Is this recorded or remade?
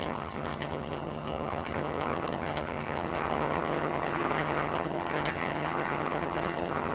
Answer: remade